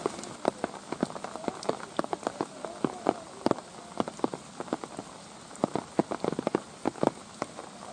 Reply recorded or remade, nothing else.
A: recorded